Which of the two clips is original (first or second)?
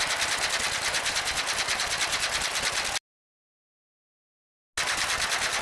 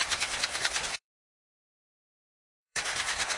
first